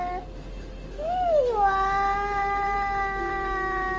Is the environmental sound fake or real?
real